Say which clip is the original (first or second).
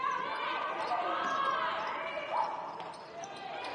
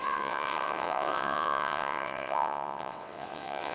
first